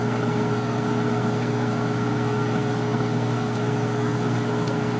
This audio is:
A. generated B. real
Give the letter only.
A